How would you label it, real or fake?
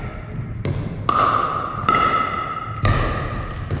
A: real